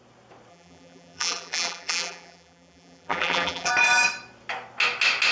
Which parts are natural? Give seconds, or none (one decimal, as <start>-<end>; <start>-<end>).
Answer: 0.0-0.5; 3.7-5.3